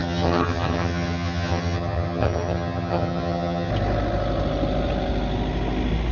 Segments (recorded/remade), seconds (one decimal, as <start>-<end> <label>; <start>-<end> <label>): 0.0-3.7 remade; 3.7-6.1 recorded